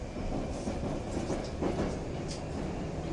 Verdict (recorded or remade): recorded